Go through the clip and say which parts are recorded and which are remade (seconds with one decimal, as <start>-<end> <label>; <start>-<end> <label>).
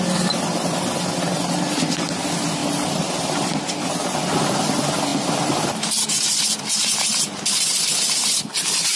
0.0-9.0 recorded